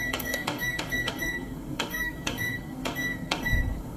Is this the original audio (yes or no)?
no